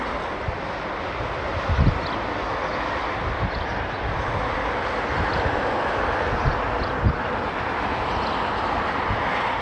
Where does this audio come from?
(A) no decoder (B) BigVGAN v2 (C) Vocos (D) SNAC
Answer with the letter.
A